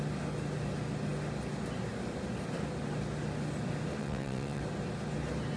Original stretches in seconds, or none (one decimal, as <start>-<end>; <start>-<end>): 0.0-4.0; 4.6-5.6